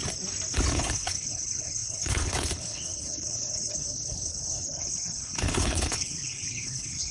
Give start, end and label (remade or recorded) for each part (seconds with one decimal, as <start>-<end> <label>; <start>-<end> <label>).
0.0-0.7 recorded; 0.7-7.1 remade